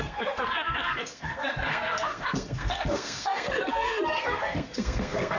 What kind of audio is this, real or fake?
fake